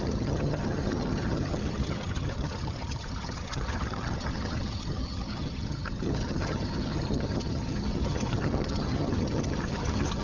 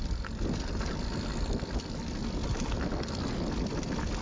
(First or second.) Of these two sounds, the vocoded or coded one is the first